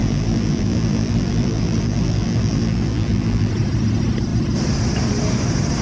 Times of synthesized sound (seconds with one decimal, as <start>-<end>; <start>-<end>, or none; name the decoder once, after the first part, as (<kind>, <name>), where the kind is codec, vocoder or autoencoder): 0.0-3.5 (vocoder, BigVGAN v2)